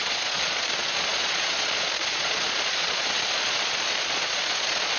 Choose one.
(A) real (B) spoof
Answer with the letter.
B